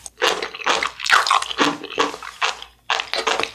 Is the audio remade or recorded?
recorded